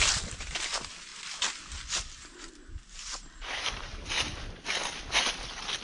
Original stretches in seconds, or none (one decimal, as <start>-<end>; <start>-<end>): 0.0-5.8